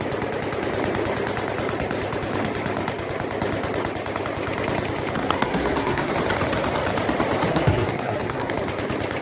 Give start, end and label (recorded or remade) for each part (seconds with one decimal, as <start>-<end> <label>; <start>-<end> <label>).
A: 0.0-5.2 recorded; 5.2-6.1 remade; 6.1-7.5 recorded; 7.5-8.5 remade; 8.5-9.2 recorded